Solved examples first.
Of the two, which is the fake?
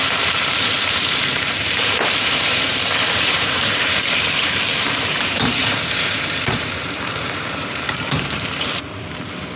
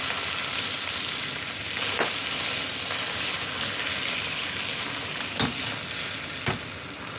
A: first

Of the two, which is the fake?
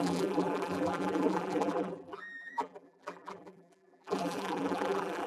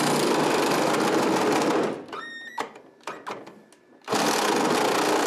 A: first